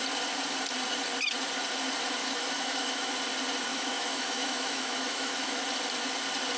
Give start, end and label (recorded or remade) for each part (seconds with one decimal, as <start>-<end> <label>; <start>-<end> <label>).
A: 0.0-2.2 recorded; 2.2-3.1 remade; 3.1-3.7 recorded; 3.7-5.6 remade; 5.6-6.6 recorded